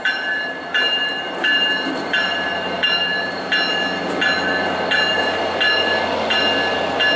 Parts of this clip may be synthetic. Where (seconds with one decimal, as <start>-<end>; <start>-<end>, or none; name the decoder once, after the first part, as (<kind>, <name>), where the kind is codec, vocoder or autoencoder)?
0.0-3.5 (vocoder, BigVGAN v2)